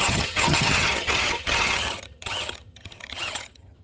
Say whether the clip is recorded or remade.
remade